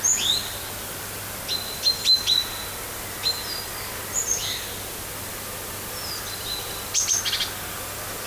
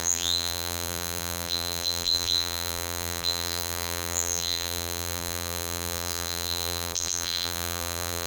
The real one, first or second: first